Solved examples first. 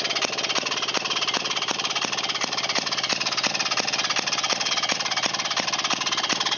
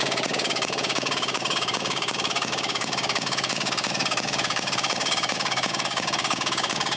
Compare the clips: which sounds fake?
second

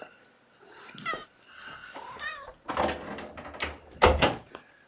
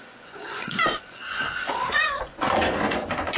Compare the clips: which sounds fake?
second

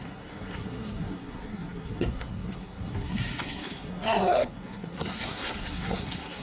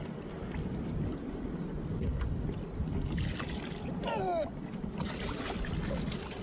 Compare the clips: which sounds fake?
first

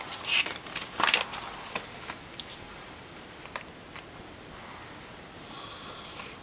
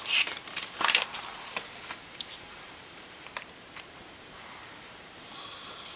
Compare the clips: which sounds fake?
second